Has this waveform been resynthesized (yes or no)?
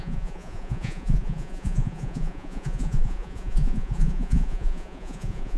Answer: yes